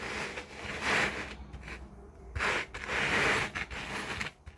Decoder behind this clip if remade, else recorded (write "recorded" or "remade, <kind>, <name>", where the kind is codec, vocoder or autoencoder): recorded